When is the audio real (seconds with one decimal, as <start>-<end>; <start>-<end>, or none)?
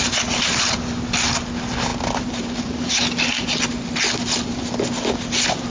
0.0-5.7